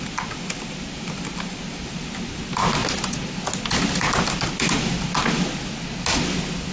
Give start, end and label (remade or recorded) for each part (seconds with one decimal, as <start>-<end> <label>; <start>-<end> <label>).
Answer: 0.0-6.7 recorded